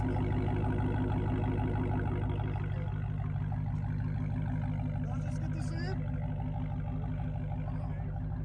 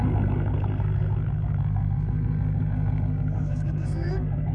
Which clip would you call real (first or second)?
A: first